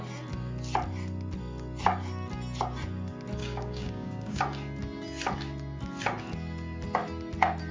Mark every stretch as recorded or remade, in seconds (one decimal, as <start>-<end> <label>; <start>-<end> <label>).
0.0-3.4 recorded; 3.4-4.4 remade; 4.4-7.7 recorded